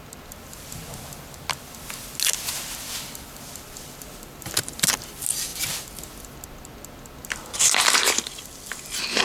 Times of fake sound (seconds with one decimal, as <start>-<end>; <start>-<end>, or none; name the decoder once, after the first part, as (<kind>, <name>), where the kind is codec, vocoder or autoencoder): none